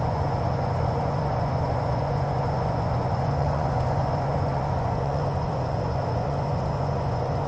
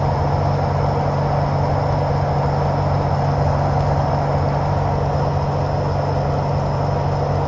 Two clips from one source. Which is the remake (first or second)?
first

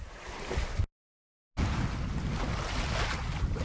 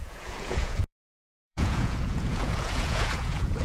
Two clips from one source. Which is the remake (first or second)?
second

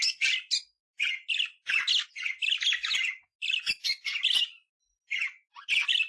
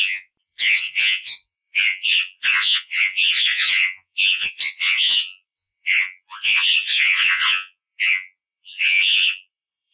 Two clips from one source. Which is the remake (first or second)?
second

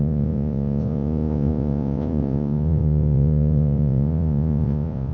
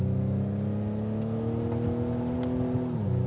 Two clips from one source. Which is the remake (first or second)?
first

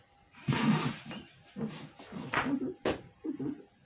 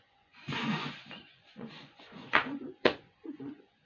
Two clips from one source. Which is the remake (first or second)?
second